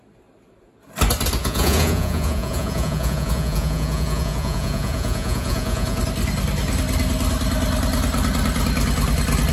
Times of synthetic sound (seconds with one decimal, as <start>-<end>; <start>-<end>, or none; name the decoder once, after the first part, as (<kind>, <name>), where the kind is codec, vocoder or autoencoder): 1.4-6.0 (vocoder, Vocos)